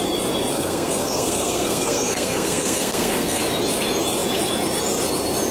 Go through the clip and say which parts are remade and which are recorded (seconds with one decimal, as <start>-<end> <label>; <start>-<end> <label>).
0.0-0.5 recorded; 0.5-3.4 remade; 3.4-5.5 recorded